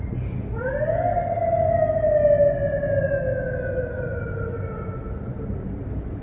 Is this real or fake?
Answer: real